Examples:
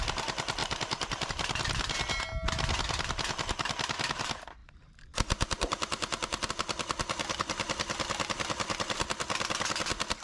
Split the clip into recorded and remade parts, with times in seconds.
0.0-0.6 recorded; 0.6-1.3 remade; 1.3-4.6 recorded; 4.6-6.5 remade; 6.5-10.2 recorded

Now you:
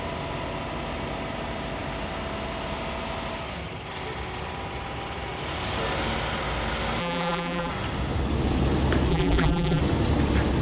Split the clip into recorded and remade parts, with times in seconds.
0.0-7.0 recorded; 7.0-7.7 remade; 7.7-9.1 recorded; 9.1-9.8 remade; 9.8-10.6 recorded

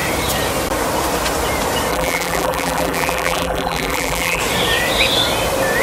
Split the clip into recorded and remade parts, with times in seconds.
0.0-1.9 recorded; 1.9-4.4 remade; 4.4-5.8 recorded